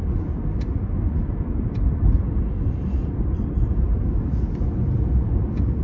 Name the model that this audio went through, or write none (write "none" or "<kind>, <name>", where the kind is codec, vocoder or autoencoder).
none